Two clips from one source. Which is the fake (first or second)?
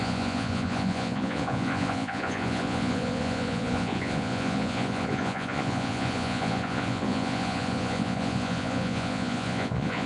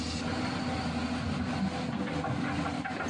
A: first